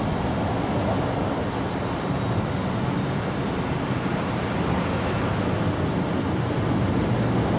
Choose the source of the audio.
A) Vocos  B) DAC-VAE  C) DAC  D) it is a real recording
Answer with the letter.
D